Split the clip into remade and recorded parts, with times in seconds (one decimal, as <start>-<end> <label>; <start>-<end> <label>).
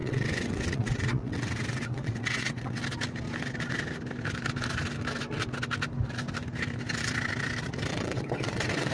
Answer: 0.0-2.8 remade; 2.8-7.9 recorded; 7.9-8.9 remade